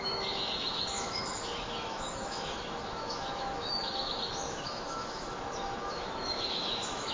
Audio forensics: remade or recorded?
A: remade